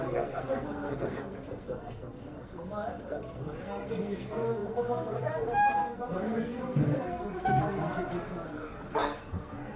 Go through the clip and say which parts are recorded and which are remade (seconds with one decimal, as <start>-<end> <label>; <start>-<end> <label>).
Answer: 0.0-9.8 remade